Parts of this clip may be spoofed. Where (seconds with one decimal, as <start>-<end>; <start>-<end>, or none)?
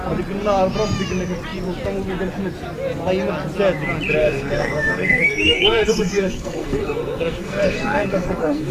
4.2-8.7